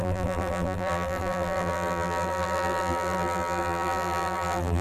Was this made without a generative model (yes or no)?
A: no